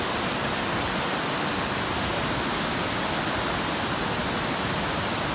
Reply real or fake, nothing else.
real